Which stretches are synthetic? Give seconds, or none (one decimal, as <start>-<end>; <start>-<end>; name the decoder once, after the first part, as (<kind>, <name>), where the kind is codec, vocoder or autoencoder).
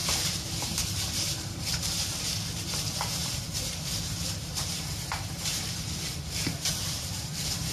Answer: 0.0-1.9 (vocoder, BigVGAN v2); 3.2-7.7